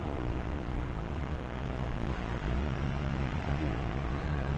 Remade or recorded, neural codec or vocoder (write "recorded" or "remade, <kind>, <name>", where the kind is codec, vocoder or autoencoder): remade, vocoder, Vocos